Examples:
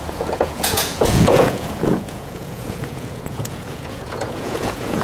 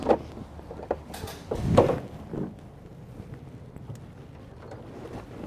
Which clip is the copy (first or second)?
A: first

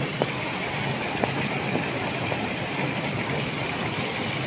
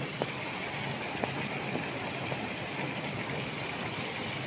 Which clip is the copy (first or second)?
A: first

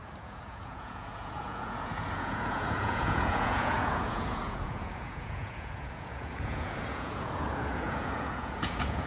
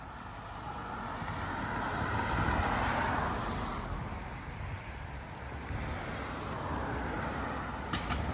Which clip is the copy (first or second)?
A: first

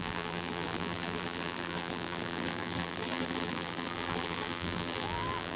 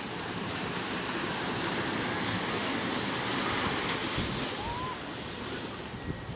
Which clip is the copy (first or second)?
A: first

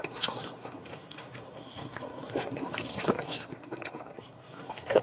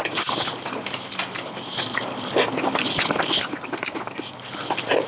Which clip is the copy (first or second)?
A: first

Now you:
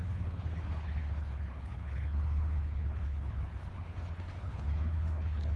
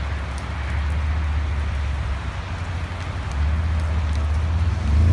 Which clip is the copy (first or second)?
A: first